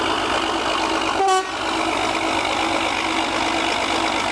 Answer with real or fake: real